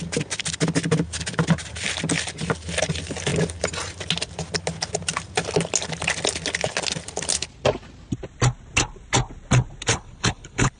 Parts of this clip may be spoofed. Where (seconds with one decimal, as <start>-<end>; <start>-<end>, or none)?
9.9-10.8